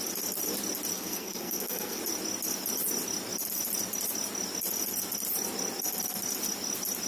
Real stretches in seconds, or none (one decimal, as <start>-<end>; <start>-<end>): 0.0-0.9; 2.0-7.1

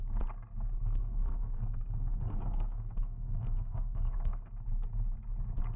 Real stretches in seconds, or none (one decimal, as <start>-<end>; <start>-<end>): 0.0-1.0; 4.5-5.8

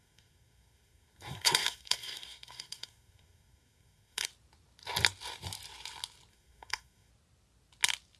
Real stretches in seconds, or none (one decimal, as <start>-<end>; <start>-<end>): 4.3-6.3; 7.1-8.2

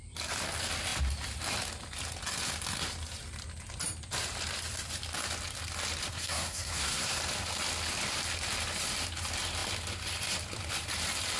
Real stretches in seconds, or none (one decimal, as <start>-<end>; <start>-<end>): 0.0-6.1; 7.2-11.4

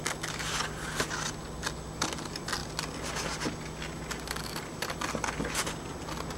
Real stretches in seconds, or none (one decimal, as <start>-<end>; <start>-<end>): 0.0-6.4